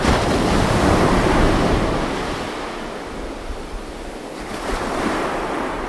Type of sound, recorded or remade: recorded